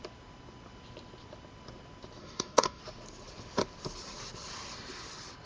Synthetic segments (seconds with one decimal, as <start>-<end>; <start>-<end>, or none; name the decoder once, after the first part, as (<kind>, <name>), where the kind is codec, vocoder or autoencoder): 2.2-2.8 (codec, DAC)